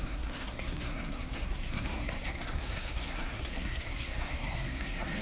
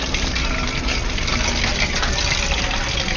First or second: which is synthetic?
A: first